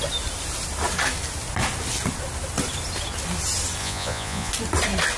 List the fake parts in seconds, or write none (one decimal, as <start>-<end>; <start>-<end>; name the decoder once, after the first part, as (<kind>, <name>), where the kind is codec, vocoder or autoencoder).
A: 3.8-4.5 (vocoder, Vocos)